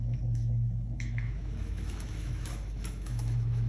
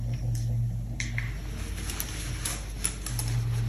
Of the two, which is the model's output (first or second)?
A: first